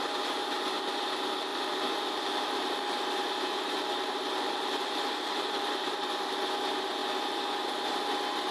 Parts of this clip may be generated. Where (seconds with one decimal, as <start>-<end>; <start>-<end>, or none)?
1.5-6.1

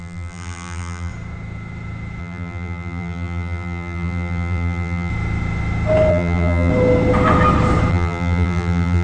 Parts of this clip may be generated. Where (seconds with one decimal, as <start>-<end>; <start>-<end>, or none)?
0.0-1.1; 2.2-5.1; 6.1-6.7; 7.9-9.0

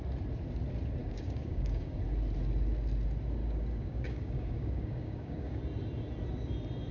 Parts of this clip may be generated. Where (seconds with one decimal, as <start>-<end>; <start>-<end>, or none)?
1.0-2.0; 3.4-5.6